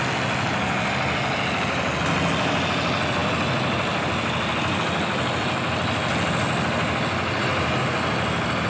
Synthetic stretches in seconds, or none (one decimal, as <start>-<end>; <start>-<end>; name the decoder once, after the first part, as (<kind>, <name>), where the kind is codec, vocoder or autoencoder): none